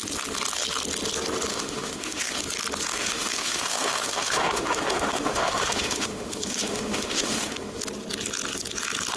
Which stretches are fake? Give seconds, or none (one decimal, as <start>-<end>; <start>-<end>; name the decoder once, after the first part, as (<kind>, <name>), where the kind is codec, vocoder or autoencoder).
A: 1.5-2.4 (autoencoder, DAC-VAE); 2.9-7.8